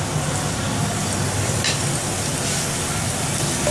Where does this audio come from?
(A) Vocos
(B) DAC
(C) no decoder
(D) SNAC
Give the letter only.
C